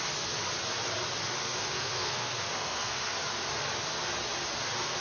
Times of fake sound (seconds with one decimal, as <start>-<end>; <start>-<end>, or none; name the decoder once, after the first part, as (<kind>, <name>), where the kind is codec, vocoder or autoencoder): 1.4-3.1 (codec, SNAC)